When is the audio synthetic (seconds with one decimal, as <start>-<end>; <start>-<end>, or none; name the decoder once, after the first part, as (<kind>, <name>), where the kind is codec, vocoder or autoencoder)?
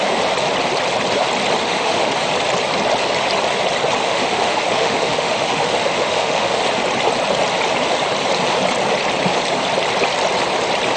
1.6-2.1 (autoencoder, DAC-VAE); 4.0-6.6